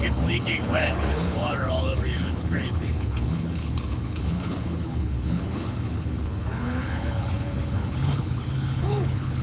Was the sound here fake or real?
fake